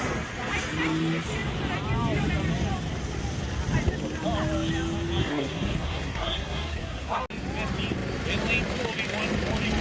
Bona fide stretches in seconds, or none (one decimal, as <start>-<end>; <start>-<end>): 0.0-5.2; 7.2-9.8